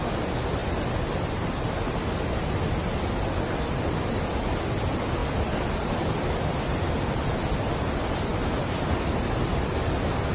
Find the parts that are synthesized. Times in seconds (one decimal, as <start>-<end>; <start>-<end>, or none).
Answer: none